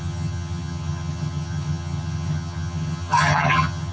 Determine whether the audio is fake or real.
fake